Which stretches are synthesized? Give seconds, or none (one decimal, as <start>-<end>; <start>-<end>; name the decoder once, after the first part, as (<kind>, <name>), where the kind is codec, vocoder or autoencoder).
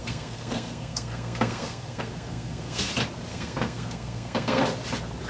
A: 0.0-2.9 (codec, SNAC); 3.3-4.6